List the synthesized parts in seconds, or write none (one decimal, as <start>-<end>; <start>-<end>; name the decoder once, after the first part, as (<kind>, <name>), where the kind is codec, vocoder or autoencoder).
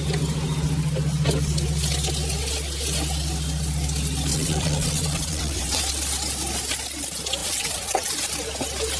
4.3-5.9 (vocoder, WaveNeXt); 7.4-8.1